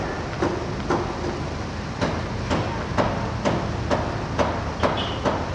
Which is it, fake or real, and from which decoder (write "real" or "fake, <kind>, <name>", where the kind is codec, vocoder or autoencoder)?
real